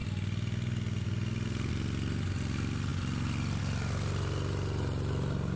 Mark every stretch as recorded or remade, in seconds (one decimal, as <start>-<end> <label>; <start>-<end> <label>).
0.0-5.6 recorded